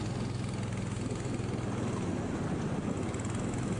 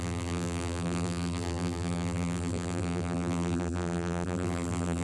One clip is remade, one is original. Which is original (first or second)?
first